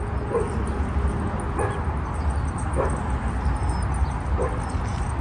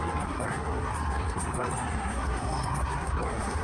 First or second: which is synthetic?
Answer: second